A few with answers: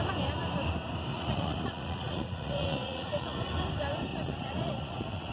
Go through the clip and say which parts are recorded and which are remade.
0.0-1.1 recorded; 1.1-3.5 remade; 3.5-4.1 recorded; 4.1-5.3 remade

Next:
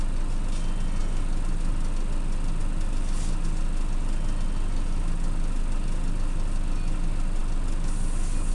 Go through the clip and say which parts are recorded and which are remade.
0.0-8.5 recorded